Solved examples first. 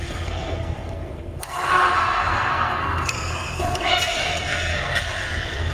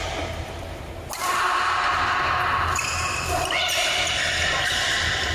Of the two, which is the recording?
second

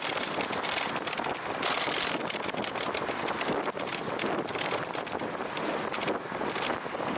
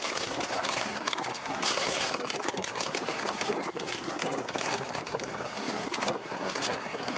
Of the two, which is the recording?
first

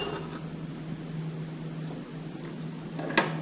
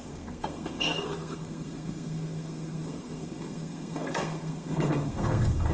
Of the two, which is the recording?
first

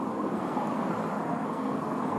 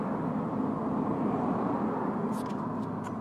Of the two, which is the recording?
second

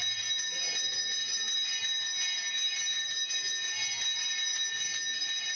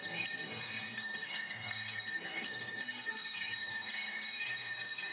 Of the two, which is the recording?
first